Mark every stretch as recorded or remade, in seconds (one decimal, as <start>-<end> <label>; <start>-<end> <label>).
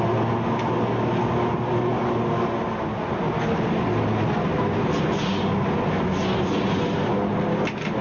0.0-8.0 recorded